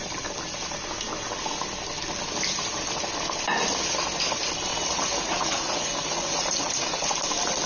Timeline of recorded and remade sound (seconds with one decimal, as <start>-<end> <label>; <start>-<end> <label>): 0.0-4.7 recorded; 4.7-7.2 remade; 7.2-7.7 recorded